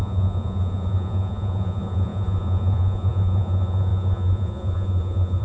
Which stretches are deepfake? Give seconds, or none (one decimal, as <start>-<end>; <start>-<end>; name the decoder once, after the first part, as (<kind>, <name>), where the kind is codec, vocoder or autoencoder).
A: 0.0-5.4 (vocoder, Vocos)